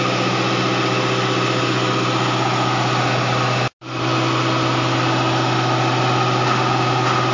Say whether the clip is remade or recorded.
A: recorded